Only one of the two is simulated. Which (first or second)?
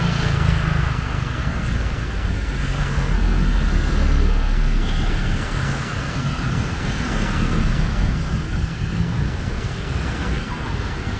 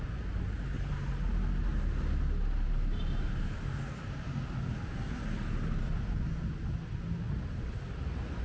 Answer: first